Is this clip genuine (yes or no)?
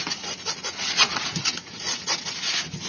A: no